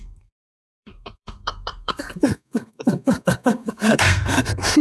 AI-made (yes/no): yes